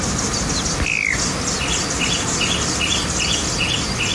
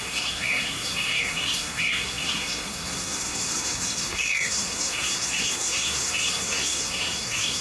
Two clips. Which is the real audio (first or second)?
first